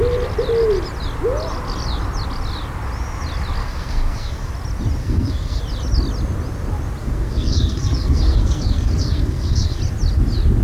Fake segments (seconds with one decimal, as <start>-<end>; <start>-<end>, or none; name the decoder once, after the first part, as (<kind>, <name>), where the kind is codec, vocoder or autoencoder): 3.6-4.5 (codec, SNAC); 5.0-5.6; 7.0-9.8